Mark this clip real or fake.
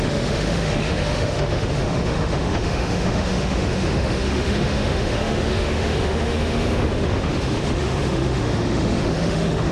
fake